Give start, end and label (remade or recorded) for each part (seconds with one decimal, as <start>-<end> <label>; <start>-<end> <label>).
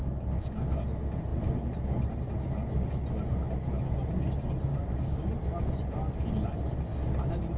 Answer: 0.0-0.8 remade; 0.8-4.7 recorded; 4.7-5.3 remade; 5.3-7.6 recorded